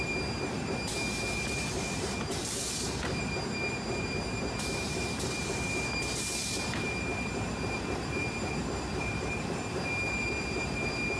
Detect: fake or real fake